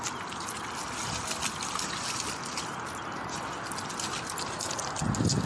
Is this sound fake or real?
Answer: real